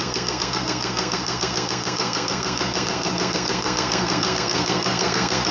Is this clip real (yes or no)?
no